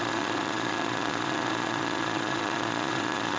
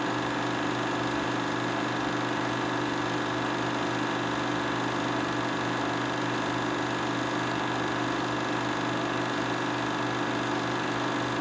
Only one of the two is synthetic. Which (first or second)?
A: first